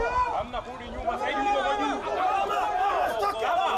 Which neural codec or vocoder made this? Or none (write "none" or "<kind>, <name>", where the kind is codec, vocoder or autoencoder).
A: none